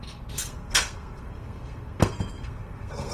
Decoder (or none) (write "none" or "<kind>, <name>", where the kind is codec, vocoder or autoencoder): codec, SNAC